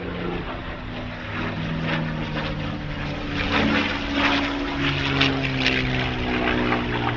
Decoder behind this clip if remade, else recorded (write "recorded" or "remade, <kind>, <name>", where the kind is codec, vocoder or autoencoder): recorded